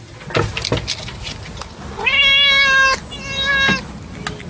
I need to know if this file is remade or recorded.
recorded